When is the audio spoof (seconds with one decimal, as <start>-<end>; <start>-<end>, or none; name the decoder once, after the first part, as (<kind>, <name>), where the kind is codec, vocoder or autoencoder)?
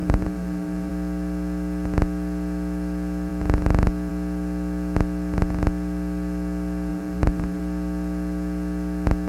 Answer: 0.0-0.9 (vocoder, BigVGAN v2); 6.9-7.6